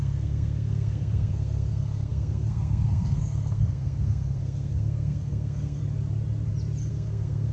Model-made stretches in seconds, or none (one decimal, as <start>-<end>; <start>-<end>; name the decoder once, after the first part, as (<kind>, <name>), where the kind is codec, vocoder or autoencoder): 0.0-5.8 (codec, SNAC); 6.9-7.5